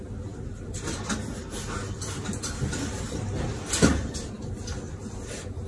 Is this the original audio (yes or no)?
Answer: yes